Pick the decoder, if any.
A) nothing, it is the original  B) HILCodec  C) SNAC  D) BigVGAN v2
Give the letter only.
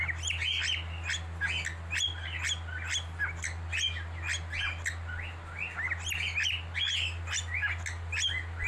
A